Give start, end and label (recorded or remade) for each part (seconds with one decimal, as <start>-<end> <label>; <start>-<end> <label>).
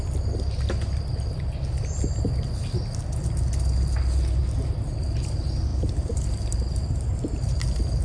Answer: 0.0-5.7 recorded; 5.7-8.0 remade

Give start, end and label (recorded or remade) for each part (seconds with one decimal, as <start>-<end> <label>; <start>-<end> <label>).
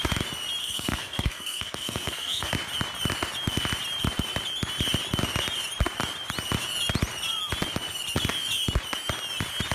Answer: 0.0-0.6 recorded; 0.6-2.5 remade; 2.5-9.7 recorded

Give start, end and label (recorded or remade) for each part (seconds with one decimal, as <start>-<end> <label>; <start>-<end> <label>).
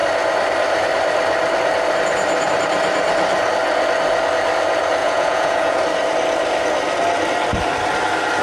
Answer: 0.0-5.0 recorded; 5.0-5.8 remade; 5.8-8.4 recorded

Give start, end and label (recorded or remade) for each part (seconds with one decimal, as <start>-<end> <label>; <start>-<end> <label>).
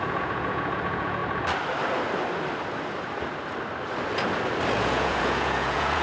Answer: 0.0-1.2 remade; 1.2-4.8 recorded; 4.8-6.0 remade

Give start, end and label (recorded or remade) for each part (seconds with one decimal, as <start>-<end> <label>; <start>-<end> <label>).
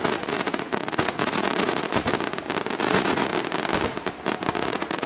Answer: 0.0-2.1 remade; 2.1-2.8 recorded; 2.8-3.3 remade; 3.3-4.5 recorded; 4.5-5.1 remade